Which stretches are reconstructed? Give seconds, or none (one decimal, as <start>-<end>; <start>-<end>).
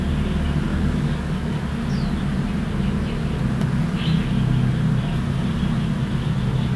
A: 0.7-1.6